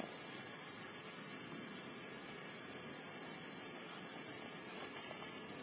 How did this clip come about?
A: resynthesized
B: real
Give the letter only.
B